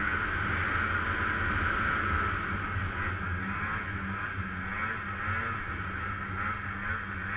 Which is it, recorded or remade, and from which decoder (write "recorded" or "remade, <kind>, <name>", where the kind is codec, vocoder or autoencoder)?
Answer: recorded